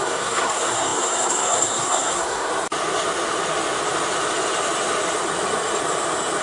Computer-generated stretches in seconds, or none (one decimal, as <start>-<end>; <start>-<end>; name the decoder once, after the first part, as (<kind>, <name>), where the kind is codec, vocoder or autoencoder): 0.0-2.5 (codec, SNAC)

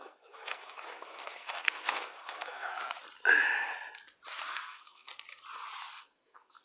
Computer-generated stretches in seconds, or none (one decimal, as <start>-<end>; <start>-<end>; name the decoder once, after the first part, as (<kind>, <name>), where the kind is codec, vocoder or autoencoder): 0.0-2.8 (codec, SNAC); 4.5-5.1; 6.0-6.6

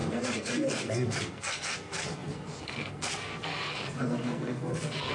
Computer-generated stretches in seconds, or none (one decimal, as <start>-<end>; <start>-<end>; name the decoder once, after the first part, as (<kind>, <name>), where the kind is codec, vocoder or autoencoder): 0.0-5.1 (codec, SNAC)